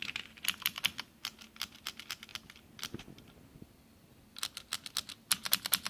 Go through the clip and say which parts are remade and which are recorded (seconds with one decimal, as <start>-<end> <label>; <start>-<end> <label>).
0.0-5.9 recorded